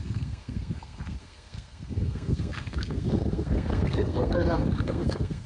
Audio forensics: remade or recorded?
remade